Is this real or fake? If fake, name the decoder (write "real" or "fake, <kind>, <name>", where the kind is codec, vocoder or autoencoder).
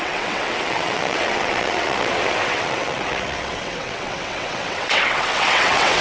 fake, vocoder, WaveNeXt